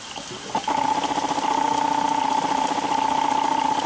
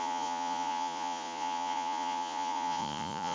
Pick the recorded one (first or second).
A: first